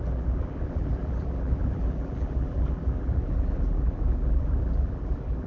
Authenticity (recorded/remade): remade